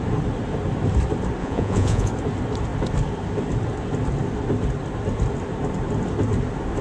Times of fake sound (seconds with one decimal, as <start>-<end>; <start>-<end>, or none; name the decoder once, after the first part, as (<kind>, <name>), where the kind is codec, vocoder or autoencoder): 1.4-2.1 (vocoder, Vocos)